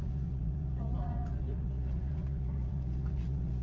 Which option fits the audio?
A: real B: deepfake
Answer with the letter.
B